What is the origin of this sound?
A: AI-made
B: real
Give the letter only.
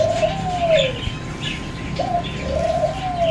B